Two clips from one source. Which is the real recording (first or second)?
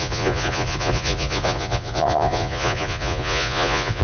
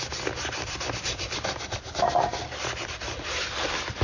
second